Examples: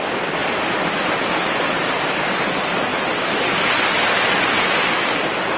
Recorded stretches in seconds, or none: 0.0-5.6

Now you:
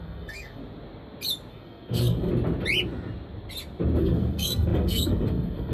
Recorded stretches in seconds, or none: 0.6-1.5; 2.3-4.0